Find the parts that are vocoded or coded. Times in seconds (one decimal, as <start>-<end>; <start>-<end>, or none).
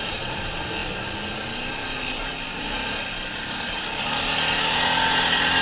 none